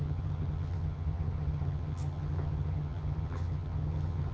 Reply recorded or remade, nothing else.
remade